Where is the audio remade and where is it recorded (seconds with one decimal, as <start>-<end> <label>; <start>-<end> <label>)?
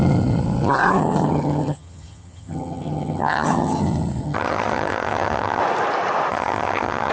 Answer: 0.0-1.0 recorded; 1.0-3.8 remade; 3.8-4.2 recorded; 4.2-5.6 remade; 5.6-6.3 recorded; 6.3-7.1 remade